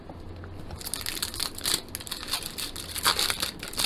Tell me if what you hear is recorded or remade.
recorded